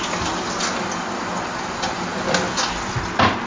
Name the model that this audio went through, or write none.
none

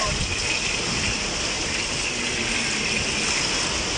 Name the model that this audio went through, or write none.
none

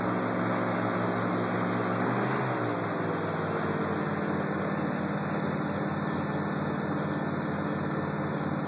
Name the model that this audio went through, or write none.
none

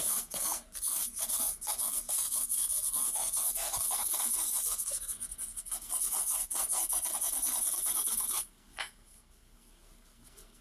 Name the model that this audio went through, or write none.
codec, SNAC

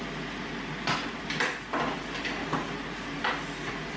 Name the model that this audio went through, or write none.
none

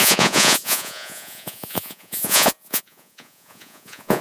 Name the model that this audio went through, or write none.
vocoder, Vocos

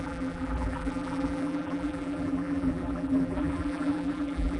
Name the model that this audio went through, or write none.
vocoder, BigVGAN v2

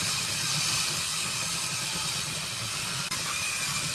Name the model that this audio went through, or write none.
none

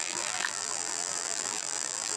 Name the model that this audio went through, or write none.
vocoder, BigVGAN v2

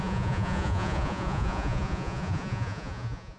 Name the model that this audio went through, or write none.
vocoder, Vocos